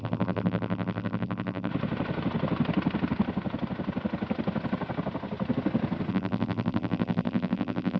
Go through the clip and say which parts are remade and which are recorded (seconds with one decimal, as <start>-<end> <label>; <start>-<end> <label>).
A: 0.0-1.7 remade; 1.7-6.1 recorded; 6.1-8.0 remade